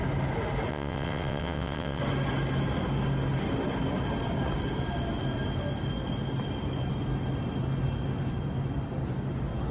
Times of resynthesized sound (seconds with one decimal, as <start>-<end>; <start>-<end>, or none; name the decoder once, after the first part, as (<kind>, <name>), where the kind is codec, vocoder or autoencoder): 0.7-2.0 (vocoder, WaveNeXt)